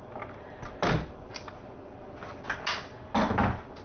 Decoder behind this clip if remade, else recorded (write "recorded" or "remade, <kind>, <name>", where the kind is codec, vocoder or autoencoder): recorded